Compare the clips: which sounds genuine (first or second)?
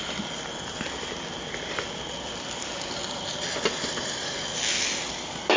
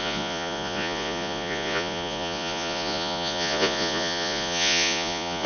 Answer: first